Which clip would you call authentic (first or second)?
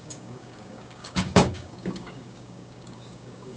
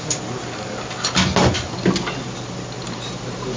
second